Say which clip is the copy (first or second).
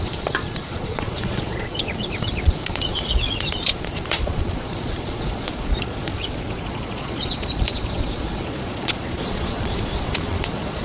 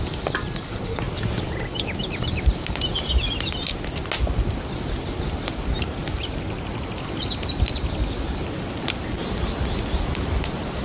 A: first